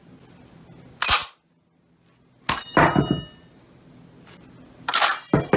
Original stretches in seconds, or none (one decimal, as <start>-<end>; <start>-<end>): 0.0-5.6